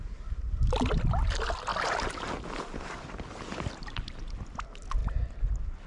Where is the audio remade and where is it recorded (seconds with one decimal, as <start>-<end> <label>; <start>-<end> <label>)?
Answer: 0.0-5.9 recorded